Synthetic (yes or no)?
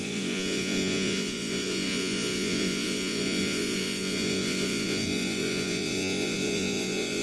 yes